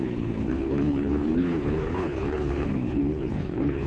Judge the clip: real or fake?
fake